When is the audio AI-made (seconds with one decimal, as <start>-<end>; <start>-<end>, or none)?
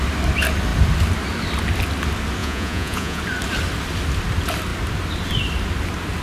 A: 2.4-3.2